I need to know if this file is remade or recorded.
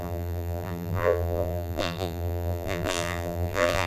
remade